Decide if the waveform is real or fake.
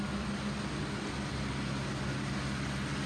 real